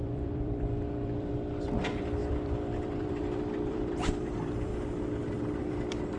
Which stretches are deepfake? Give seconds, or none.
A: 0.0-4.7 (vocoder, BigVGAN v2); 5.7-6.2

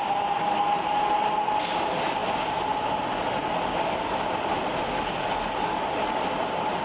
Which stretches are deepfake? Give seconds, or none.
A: none

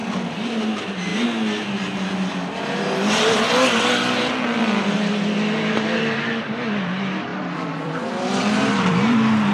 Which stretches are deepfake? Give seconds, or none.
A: 0.0-1.1 (vocoder, BigVGAN v2); 4.8-9.5

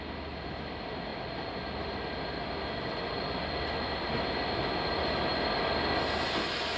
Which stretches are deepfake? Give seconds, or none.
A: none

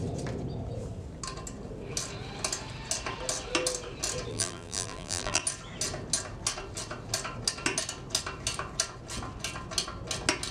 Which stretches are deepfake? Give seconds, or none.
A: 4.3-5.4 (vocoder, BigVGAN v2)

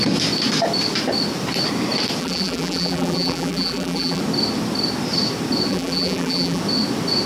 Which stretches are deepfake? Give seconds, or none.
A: 2.2-4.2 (vocoder, BigVGAN v2); 5.7-6.6